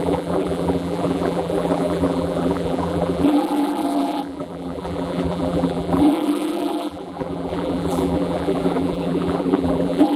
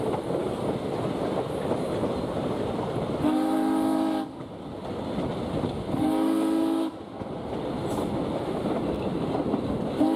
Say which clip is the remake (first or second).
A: first